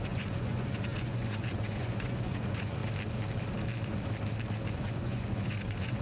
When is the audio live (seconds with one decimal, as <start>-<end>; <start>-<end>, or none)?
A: 2.8-4.7